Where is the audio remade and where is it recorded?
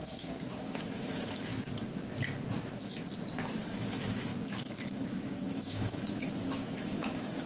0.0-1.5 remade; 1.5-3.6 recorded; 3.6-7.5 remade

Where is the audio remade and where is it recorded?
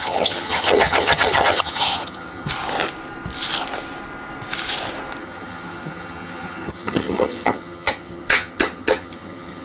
0.0-2.5 remade; 2.5-5.2 recorded; 5.2-9.6 remade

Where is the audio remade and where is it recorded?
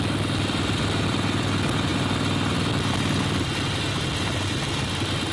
0.0-5.3 recorded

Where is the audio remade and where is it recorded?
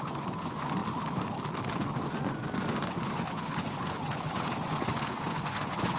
0.0-0.8 remade; 0.8-1.7 recorded; 1.7-6.0 remade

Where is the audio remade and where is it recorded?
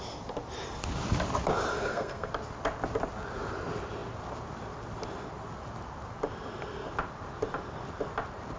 0.0-1.7 recorded; 1.7-2.3 remade; 2.3-8.6 recorded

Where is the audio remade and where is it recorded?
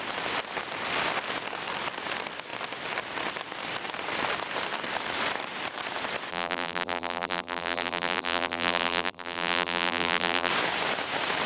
0.0-6.3 recorded; 6.3-10.5 remade; 10.5-11.5 recorded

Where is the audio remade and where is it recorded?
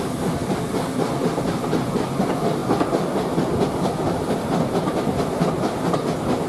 0.0-6.5 recorded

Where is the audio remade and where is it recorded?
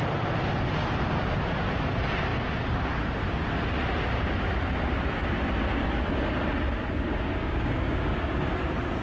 0.0-7.4 recorded; 7.4-8.0 remade; 8.0-9.0 recorded